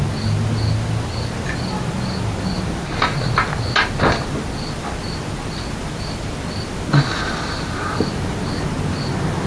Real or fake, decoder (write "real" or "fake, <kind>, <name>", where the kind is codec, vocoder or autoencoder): real